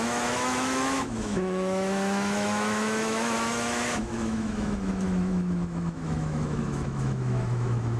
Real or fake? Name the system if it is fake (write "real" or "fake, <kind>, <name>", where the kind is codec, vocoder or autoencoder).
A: fake, autoencoder, DAC-VAE